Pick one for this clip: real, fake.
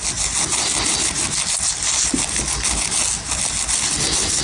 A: real